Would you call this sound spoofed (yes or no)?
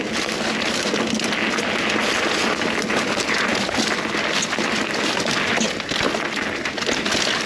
no